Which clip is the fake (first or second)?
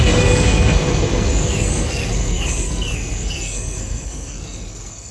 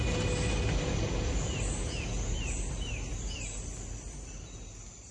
first